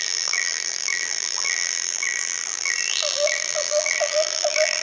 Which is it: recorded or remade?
remade